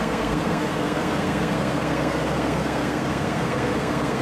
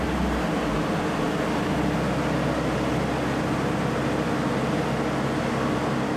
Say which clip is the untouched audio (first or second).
second